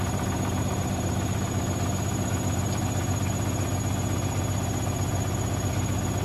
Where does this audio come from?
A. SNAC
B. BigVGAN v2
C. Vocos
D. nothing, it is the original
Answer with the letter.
D